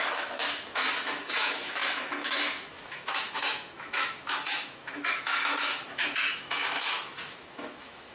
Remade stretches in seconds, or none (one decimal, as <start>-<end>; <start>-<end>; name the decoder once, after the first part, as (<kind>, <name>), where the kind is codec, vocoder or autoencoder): 0.0-8.1 (autoencoder, DAC-VAE)